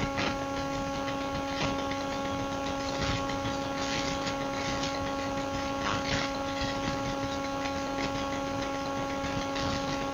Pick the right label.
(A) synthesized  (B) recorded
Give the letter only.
B